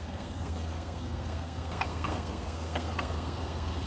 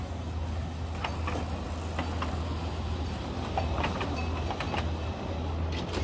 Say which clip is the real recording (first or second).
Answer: second